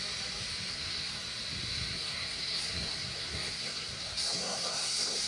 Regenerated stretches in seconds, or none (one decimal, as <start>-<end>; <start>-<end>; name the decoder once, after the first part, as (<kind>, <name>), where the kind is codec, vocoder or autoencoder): 0.7-1.2 (codec, SNAC); 1.7-5.3